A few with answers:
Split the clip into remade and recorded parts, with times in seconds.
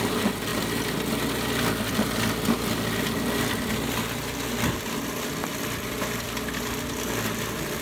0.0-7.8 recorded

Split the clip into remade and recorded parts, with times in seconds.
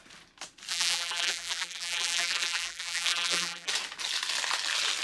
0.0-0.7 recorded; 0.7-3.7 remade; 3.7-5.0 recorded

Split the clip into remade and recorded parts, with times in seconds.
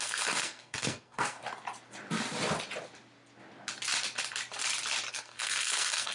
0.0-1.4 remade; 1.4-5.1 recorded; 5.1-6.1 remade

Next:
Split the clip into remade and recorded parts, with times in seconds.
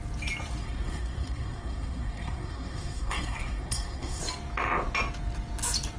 0.0-0.6 recorded; 0.6-4.2 remade; 4.2-6.0 recorded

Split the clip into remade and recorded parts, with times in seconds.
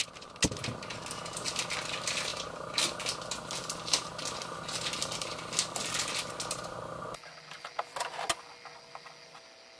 0.0-9.8 recorded